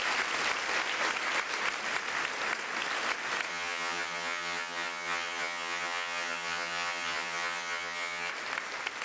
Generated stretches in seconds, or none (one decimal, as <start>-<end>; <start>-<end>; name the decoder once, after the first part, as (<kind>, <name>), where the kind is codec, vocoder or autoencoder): 3.5-8.3 (vocoder, HiFi-GAN)